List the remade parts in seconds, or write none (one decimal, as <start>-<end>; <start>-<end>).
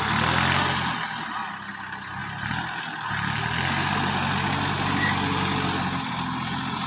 none